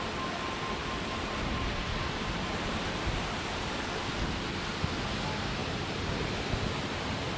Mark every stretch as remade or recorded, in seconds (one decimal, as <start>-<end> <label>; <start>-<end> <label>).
0.0-0.8 recorded; 0.8-4.1 remade; 4.1-5.6 recorded; 5.6-6.3 remade; 6.3-7.4 recorded